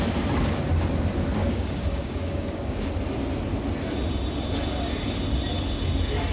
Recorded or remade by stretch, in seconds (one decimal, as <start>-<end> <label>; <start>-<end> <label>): 0.0-1.4 recorded; 1.4-2.9 remade; 2.9-6.3 recorded